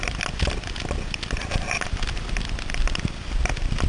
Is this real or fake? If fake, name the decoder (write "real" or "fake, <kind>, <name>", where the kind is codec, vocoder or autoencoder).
real